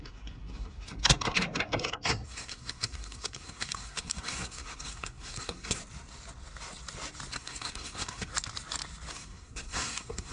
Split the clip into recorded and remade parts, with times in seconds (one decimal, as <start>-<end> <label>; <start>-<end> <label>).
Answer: 0.0-5.8 remade; 5.8-7.3 recorded; 7.3-8.3 remade; 8.3-9.1 recorded; 9.1-10.3 remade